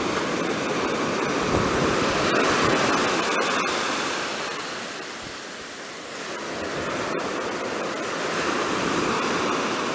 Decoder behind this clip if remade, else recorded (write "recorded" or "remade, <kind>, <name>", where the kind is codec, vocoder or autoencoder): recorded